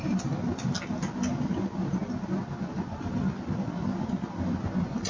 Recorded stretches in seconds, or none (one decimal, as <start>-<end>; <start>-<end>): 0.0-5.1